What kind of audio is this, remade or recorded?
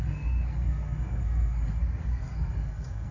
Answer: remade